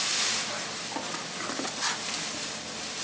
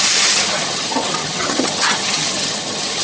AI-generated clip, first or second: second